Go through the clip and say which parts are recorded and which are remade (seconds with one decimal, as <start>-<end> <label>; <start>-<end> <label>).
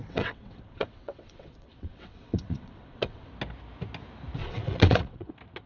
0.0-3.3 remade; 3.3-4.4 recorded; 4.4-5.3 remade; 5.3-5.7 recorded